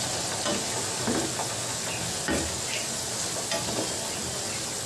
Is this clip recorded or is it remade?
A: recorded